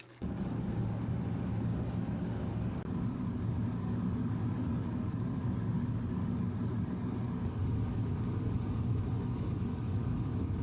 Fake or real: fake